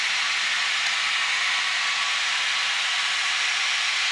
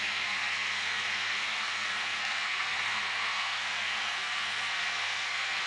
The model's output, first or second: second